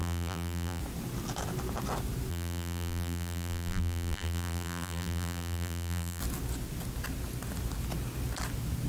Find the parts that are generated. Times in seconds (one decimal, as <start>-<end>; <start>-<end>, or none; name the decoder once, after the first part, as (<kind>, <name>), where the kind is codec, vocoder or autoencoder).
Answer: 0.0-0.8 (vocoder, BigVGAN v2); 2.3-6.2